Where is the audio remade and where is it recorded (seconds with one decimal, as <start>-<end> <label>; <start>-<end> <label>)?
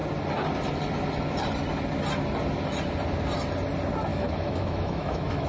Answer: 0.0-4.1 recorded; 4.1-5.5 remade